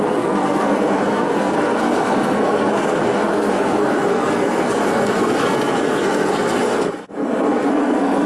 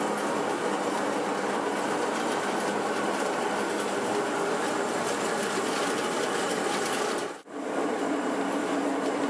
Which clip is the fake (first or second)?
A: first